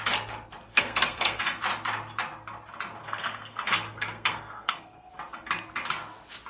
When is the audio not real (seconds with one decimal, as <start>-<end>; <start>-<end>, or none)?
0.7-1.4; 3.0-5.1